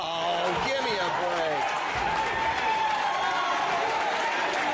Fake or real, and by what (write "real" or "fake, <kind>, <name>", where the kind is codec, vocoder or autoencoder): real